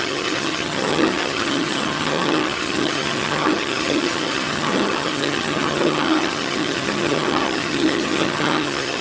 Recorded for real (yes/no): no